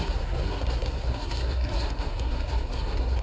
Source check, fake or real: fake